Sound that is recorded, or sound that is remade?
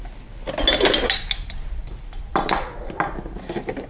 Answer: recorded